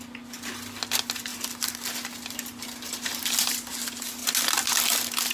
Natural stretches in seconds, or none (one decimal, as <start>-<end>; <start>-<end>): 0.0-5.3